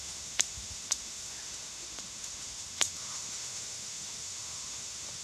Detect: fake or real fake